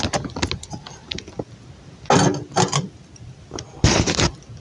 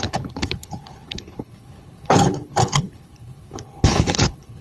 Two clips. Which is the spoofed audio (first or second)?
second